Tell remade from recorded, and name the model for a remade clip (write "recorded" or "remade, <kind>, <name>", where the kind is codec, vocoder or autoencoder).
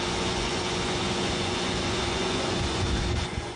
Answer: remade, vocoder, Vocos